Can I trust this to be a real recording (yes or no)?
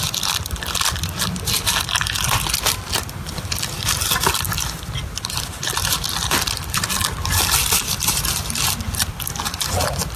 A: no